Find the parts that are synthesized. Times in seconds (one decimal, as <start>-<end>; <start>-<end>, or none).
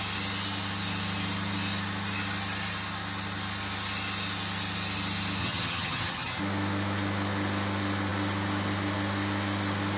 5.4-6.4